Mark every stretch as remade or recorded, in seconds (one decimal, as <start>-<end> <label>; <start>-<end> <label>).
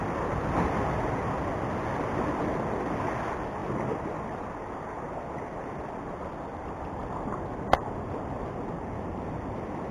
0.0-3.6 recorded; 3.6-4.5 remade; 4.5-9.9 recorded